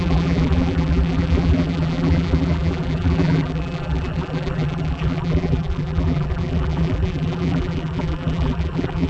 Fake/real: fake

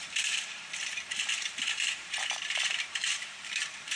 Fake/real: fake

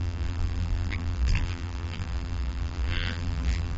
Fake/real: fake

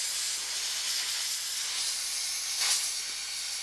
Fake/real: real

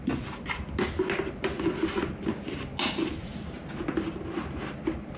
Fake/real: real